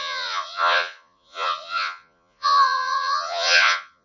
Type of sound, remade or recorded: remade